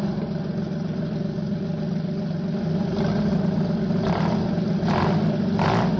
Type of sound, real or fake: real